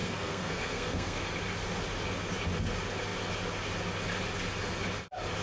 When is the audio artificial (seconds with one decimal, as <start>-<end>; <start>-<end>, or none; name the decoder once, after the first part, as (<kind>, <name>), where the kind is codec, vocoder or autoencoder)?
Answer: 0.0-1.3 (codec, SNAC)